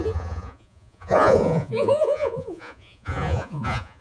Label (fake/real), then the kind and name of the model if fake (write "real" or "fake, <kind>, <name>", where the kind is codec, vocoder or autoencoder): fake, vocoder, Vocos